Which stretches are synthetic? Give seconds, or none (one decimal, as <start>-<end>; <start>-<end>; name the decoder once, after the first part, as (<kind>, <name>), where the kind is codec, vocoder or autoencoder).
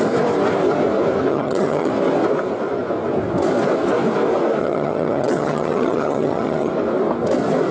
1.3-1.9 (vocoder, HiFi-GAN); 4.6-6.7